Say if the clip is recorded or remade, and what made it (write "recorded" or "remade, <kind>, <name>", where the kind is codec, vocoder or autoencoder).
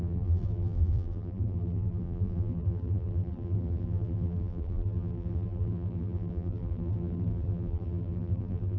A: remade, vocoder, BigVGAN v2